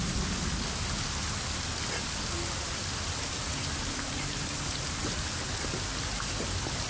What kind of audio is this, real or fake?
real